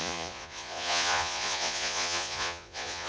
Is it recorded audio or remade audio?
remade